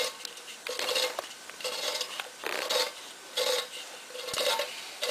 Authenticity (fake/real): real